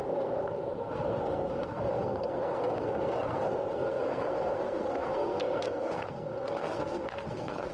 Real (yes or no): no